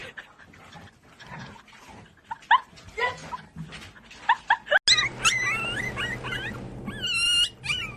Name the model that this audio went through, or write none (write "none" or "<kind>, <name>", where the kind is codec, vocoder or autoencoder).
none